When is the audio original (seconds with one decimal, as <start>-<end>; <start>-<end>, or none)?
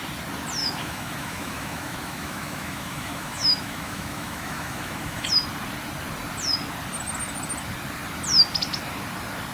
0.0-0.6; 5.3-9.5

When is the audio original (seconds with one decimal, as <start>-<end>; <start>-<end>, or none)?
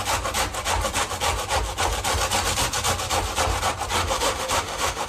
0.0-4.0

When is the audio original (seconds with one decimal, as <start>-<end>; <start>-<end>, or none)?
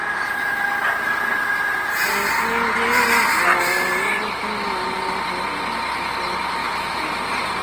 0.0-6.6; 7.1-7.6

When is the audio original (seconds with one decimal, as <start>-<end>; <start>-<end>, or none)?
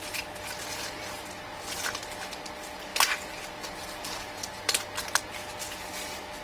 0.0-6.4